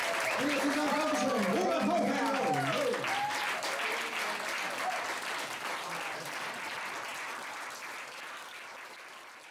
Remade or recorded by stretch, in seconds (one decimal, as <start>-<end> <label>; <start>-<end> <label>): 0.0-9.5 recorded